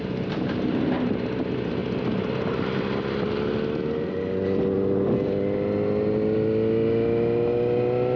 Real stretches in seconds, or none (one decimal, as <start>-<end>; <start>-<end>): 0.0-8.2